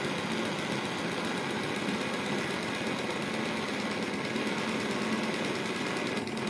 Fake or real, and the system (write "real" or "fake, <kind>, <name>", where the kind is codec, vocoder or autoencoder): real